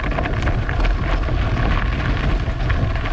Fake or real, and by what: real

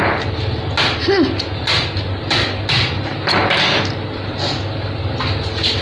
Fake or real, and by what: real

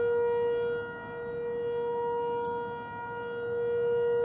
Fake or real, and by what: real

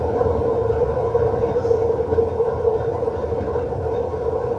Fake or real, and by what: real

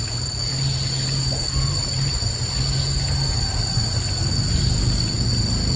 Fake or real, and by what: real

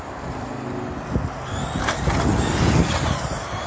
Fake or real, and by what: real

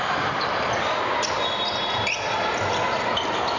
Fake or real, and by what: real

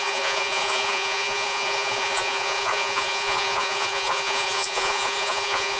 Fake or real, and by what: fake, vocoder, Vocos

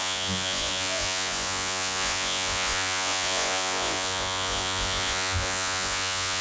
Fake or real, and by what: fake, vocoder, Vocos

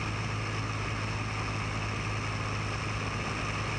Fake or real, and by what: real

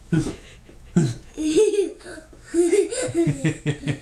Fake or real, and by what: fake, autoencoder, DAC-VAE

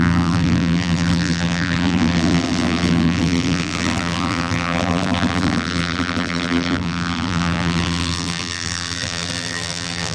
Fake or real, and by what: fake, vocoder, BigVGAN v2